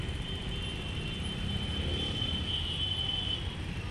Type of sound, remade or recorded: recorded